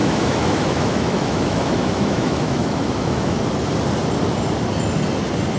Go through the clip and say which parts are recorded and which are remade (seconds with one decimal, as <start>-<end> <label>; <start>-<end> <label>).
0.0-3.4 remade; 3.4-5.6 recorded